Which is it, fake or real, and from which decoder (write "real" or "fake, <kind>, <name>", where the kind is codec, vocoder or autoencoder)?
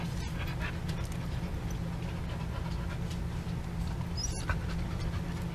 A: real